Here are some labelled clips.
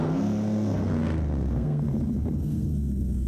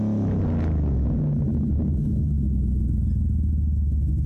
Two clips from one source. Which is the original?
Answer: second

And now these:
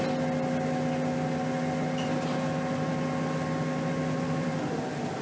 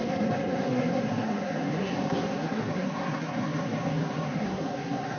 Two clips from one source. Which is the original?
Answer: first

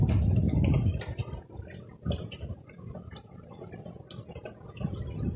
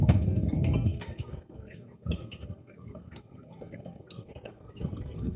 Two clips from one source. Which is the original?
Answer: first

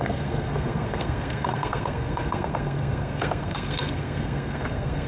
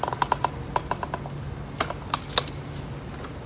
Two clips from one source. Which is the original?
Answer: second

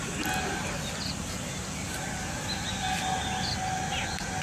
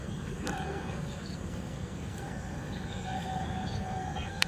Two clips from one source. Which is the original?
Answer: first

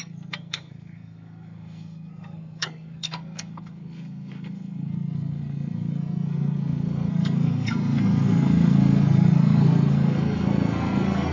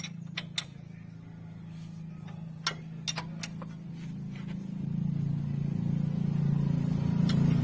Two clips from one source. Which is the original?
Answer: second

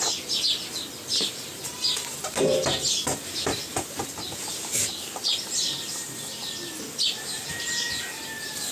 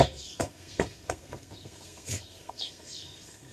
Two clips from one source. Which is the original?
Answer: first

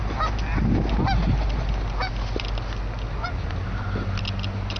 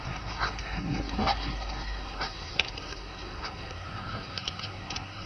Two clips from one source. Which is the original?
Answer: first